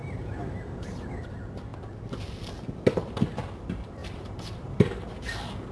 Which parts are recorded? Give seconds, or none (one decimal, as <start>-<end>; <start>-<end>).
1.2-4.0; 5.1-5.7